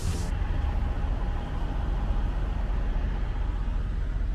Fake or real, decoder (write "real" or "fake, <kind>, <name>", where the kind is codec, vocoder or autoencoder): real